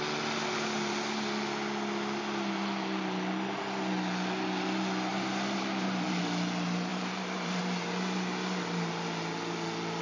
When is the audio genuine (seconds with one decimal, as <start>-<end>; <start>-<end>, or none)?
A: 0.0-5.1; 6.2-6.9; 7.6-10.0